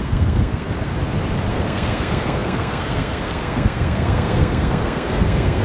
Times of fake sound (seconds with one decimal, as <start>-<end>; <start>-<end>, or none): 0.0-0.9; 1.5-5.6